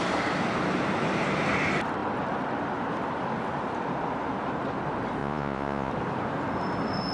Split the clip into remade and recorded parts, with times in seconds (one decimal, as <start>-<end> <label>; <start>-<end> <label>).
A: 0.0-5.2 recorded; 5.2-5.9 remade; 5.9-7.1 recorded